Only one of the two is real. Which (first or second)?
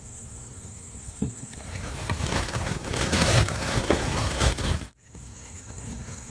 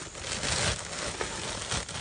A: second